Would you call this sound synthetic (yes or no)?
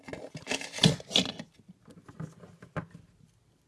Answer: no